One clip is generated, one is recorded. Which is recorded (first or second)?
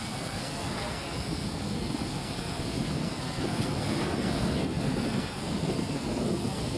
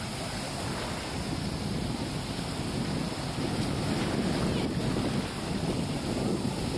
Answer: second